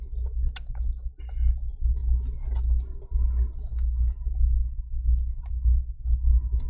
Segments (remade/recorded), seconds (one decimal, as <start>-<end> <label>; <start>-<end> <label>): 0.0-6.7 recorded